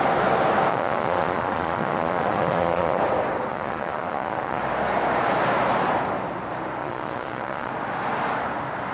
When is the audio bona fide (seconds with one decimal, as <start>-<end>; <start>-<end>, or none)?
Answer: 0.0-0.7; 3.0-3.5; 4.6-6.8; 7.7-8.9